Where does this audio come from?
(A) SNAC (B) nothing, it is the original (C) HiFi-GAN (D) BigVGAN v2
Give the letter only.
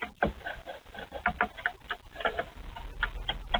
B